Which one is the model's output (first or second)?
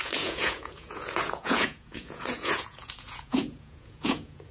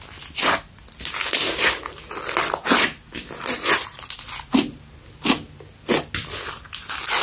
first